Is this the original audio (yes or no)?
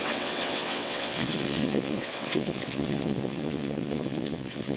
no